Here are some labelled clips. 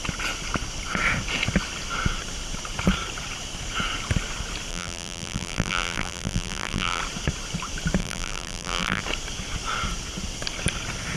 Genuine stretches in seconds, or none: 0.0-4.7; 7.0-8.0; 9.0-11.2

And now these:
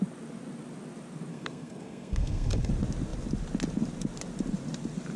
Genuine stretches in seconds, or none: 0.0-1.3; 2.7-5.2

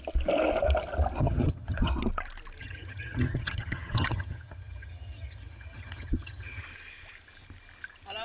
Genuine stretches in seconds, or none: 0.0-1.2; 1.9-2.6; 6.6-8.2

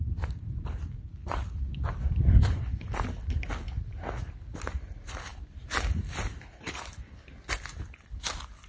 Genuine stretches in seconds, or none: 0.0-8.7